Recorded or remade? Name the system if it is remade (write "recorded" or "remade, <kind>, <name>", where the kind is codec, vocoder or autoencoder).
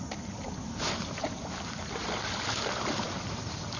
recorded